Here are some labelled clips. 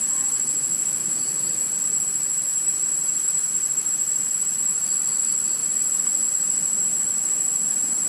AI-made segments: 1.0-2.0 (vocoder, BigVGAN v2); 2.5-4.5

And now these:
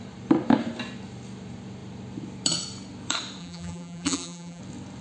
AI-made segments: 3.4-4.6 (vocoder, BigVGAN v2)

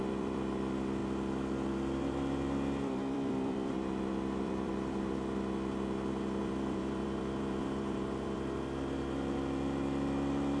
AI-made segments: 0.0-4.7 (vocoder, BigVGAN v2); 6.4-10.6

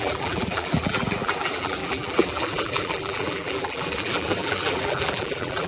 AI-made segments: 0.0-5.7 (vocoder, BigVGAN v2)